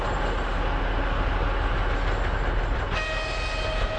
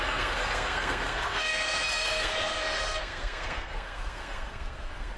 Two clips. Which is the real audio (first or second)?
first